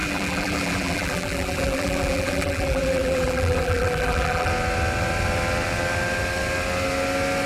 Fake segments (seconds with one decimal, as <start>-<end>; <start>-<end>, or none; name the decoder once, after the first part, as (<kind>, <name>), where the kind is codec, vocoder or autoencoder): 0.0-4.5 (vocoder, BigVGAN v2)